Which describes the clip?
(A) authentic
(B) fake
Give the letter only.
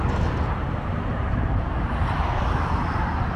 A